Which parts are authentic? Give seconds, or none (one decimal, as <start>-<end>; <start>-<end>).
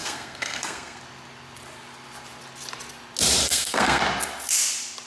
1.0-3.4; 4.0-5.1